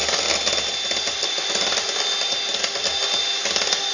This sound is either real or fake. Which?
real